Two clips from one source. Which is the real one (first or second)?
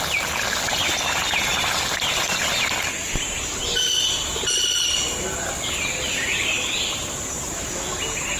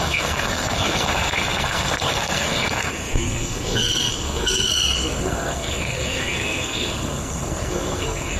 first